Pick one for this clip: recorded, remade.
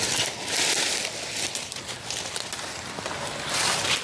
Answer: recorded